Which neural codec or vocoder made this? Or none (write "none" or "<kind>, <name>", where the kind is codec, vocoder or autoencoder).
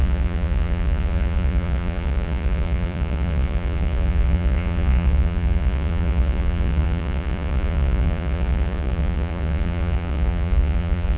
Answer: vocoder, Vocos